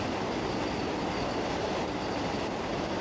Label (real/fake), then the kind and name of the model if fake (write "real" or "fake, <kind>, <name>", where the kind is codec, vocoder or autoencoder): real